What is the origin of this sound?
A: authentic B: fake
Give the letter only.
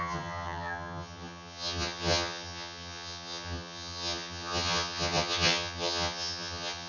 B